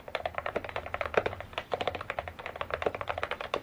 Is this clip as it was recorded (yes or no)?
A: no